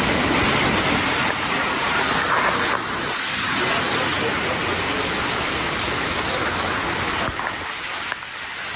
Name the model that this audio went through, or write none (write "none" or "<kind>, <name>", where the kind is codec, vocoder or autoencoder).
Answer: none